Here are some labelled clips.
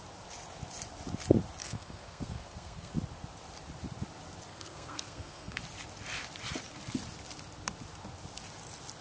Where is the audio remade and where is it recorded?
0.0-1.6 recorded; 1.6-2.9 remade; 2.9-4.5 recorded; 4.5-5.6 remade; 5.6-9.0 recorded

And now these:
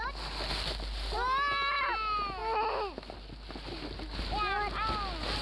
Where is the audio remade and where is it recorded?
0.0-5.4 recorded

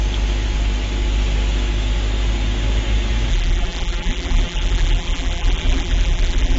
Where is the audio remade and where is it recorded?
0.0-3.3 recorded; 3.3-6.6 remade